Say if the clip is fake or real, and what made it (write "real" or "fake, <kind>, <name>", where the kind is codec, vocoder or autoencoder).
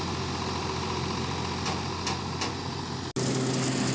real